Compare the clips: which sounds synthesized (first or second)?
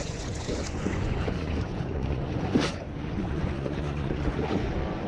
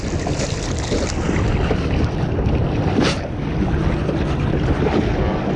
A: first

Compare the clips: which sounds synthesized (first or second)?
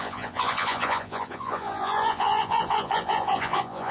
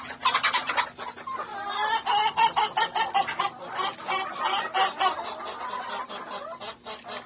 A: first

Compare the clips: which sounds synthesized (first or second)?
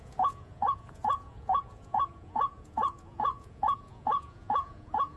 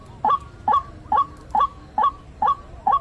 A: first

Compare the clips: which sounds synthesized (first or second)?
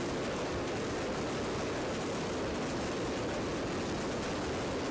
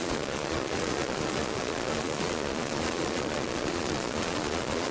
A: second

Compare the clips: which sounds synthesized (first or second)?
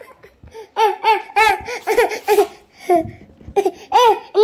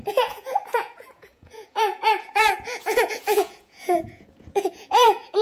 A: second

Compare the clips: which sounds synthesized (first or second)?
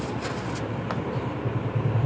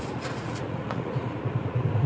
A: second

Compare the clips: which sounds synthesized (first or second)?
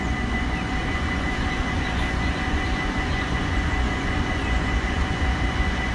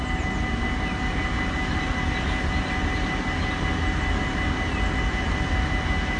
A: first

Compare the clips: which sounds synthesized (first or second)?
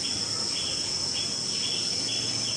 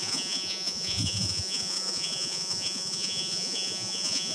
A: second